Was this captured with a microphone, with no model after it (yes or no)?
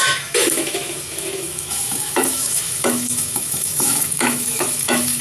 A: no